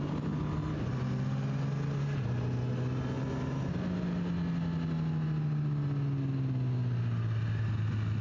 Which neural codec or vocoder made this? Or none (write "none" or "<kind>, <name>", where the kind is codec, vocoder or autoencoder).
none